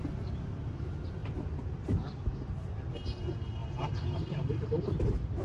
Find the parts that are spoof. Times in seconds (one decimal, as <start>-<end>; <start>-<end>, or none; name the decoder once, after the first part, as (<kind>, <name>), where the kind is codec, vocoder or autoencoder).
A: 1.2-2.2 (vocoder, BigVGAN v2); 3.6-4.6